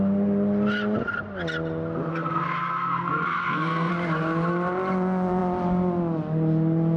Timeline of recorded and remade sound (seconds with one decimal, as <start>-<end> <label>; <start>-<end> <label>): 0.0-2.1 recorded; 2.1-3.9 remade; 3.9-7.0 recorded